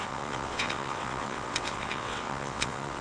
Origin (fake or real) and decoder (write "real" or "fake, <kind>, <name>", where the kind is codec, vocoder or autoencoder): fake, vocoder, WaveNeXt